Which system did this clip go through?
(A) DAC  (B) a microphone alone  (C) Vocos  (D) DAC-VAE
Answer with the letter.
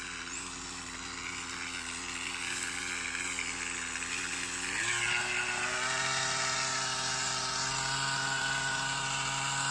B